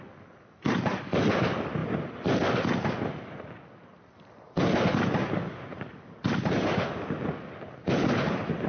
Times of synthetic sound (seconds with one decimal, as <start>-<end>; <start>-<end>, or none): 1.8-3.5; 5.7-6.5